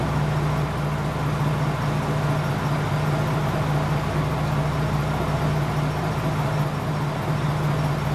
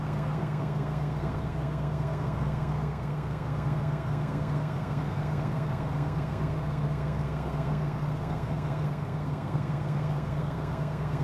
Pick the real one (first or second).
first